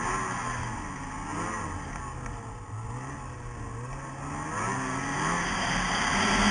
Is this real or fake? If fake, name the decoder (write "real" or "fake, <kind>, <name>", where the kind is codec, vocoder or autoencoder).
real